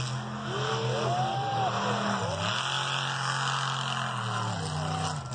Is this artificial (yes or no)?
no